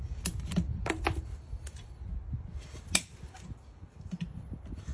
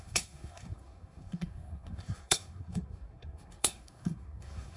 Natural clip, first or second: first